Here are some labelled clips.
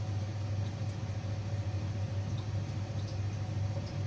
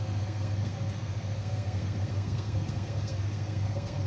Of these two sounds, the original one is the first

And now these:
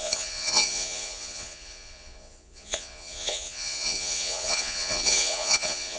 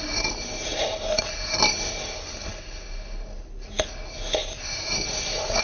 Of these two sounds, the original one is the second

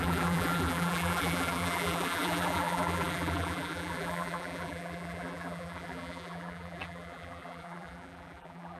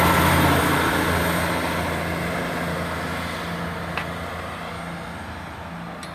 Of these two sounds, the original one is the second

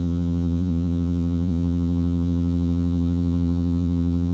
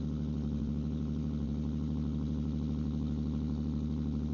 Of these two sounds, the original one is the second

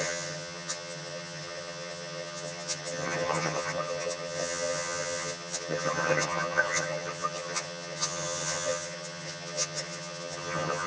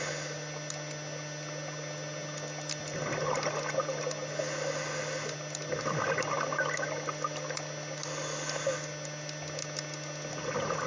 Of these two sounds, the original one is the second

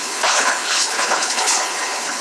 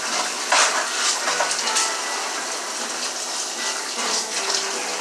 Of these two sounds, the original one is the second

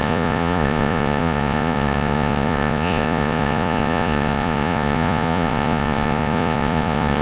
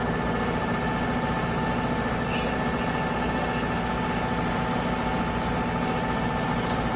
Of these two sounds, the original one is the second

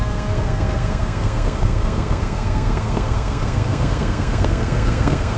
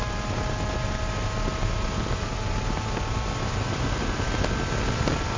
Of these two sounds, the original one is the second